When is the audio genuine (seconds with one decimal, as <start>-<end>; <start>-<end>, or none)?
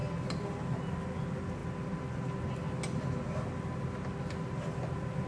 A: 0.0-5.3